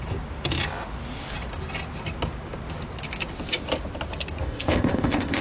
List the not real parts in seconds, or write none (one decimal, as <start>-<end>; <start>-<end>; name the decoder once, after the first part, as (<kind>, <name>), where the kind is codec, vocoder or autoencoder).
4.4-5.4 (codec, ZipCodec)

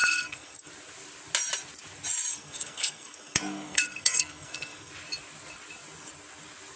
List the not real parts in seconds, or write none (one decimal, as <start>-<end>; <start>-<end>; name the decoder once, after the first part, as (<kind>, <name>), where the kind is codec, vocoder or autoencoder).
0.0-0.7 (codec, SNAC); 2.3-4.9